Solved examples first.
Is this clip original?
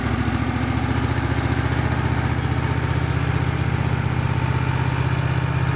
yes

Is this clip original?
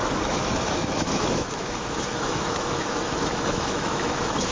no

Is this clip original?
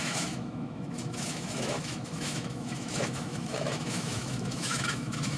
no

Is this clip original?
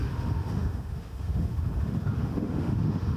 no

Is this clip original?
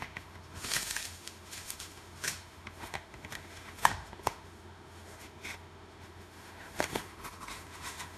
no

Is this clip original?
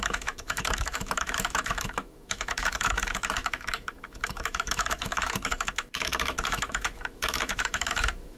no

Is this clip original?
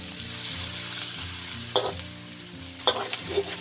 yes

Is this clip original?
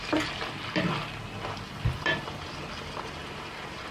yes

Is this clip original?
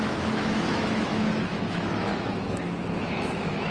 no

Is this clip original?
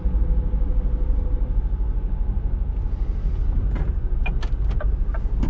yes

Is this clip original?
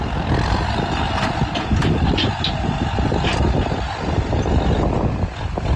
yes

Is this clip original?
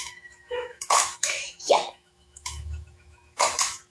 no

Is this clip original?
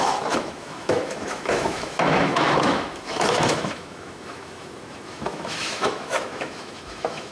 no